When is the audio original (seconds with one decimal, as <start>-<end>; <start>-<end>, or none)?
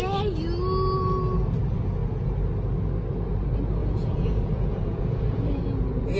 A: 0.0-3.8; 5.6-6.2